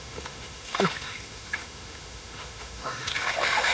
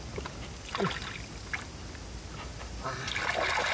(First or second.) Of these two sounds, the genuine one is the second